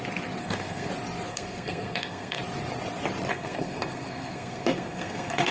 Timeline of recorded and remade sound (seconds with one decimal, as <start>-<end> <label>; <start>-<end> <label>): 0.0-0.4 recorded; 0.4-0.9 remade; 0.9-1.3 recorded; 1.3-2.4 remade; 2.4-3.3 recorded; 3.3-5.5 remade